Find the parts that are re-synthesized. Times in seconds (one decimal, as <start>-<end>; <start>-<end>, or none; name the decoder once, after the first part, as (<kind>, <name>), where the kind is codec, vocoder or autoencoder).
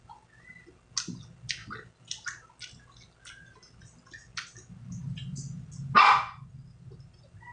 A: none